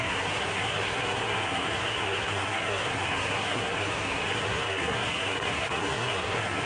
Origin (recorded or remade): remade